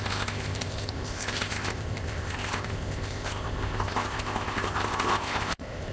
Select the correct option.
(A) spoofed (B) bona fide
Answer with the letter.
A